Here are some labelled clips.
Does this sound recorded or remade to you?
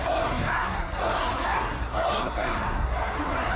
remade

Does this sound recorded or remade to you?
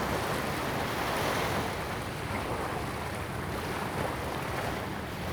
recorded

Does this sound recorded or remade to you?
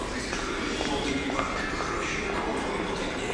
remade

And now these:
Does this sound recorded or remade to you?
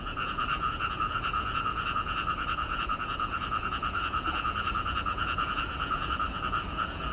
remade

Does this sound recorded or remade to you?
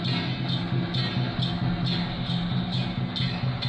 recorded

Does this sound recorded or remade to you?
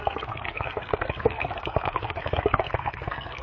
remade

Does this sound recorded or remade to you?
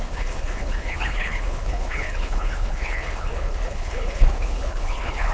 remade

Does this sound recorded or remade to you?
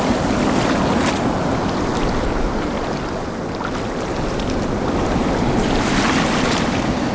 recorded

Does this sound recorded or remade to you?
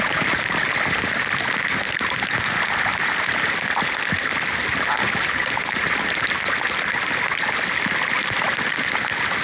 recorded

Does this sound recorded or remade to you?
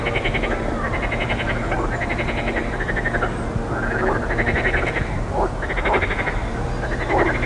recorded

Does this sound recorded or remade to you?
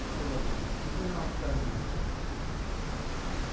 recorded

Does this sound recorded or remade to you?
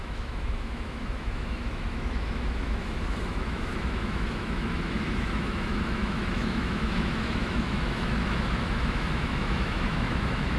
remade